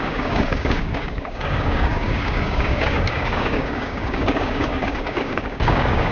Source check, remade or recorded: remade